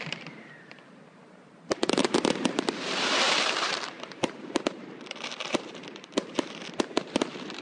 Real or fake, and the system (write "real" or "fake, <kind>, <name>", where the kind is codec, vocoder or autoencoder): fake, vocoder, BigVGAN v2